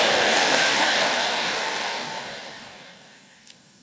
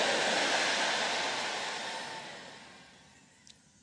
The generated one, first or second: first